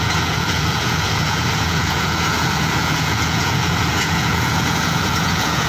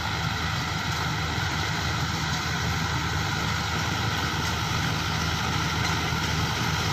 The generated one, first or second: first